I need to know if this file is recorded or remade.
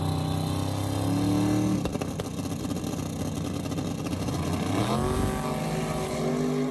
recorded